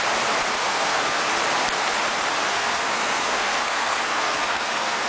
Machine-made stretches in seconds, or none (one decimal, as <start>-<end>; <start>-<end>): 0.6-1.2; 2.5-5.1